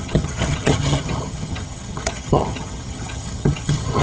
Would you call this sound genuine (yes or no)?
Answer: no